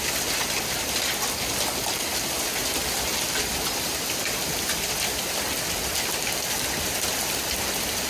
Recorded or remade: recorded